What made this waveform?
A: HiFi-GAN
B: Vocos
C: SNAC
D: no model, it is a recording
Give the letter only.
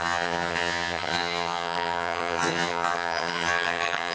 A